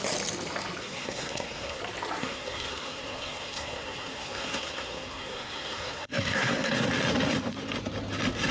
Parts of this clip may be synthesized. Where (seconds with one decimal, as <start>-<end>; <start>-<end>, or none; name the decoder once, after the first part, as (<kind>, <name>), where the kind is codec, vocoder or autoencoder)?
0.8-1.8 (codec, SNAC); 2.2-6.7